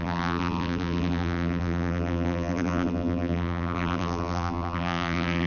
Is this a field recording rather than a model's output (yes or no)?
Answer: no